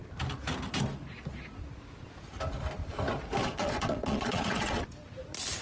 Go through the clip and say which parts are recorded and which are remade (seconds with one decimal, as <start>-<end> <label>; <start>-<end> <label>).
0.0-3.4 recorded; 3.4-4.8 remade; 4.8-5.6 recorded